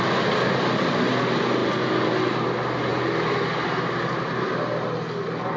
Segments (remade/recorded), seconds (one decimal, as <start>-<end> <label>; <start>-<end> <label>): 0.0-5.6 recorded